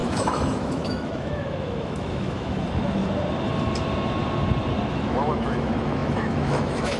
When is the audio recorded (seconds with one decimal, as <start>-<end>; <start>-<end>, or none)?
3.0-4.9